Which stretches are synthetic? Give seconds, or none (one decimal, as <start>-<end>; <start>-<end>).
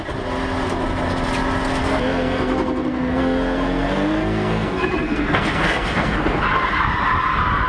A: 1.8-6.4